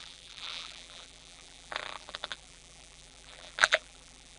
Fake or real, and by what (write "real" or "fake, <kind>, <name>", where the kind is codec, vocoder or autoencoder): fake, vocoder, BigVGAN v2